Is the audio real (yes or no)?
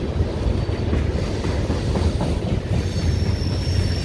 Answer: yes